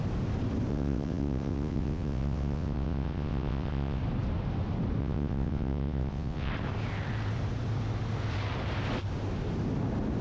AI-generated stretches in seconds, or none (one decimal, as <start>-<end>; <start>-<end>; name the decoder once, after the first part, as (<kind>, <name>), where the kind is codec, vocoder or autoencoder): 0.7-4.0 (vocoder, WaveNeXt); 5.0-6.5